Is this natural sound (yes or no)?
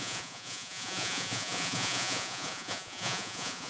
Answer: no